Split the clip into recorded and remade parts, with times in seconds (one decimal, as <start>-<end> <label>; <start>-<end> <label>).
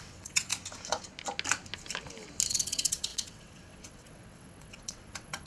0.0-0.5 remade; 0.5-2.5 recorded; 2.5-5.5 remade